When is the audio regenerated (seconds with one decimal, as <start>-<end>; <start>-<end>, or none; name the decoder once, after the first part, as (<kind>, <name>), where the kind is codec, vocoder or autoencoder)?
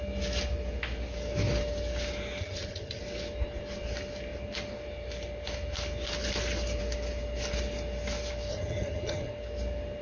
2.4-3.0 (vocoder, HiFi-GAN); 8.5-9.3